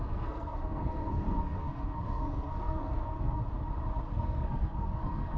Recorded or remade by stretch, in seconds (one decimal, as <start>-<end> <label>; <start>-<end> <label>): 0.0-3.4 remade; 3.4-4.1 recorded; 4.1-5.4 remade